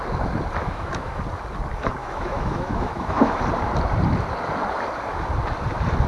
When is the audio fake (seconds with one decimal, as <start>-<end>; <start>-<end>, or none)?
0.6-1.2; 2.0-3.4